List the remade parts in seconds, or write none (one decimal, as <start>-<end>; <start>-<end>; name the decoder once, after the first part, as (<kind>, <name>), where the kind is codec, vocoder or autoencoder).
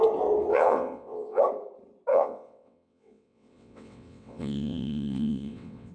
0.5-1.4 (vocoder, WaveNeXt); 2.1-5.9